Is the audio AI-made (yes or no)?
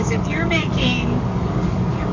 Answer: yes